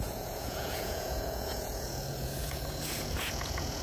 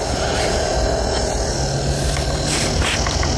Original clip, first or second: second